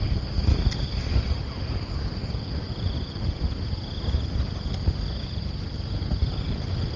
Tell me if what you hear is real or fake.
real